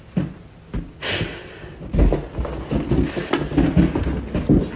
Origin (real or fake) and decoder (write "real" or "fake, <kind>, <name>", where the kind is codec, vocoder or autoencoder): real